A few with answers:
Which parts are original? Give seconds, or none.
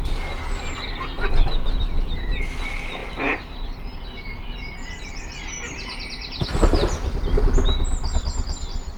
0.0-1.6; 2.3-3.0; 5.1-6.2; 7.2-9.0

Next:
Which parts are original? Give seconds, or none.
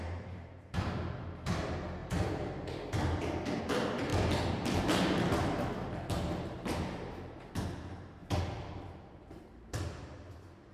none